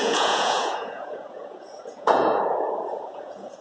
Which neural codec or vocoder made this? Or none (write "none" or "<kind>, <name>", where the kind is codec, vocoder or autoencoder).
vocoder, Vocos